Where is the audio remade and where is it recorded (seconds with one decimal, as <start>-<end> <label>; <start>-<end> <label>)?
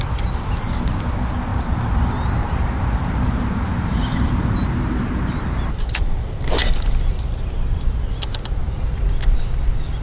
0.0-1.5 recorded; 1.5-5.7 remade; 5.7-10.0 recorded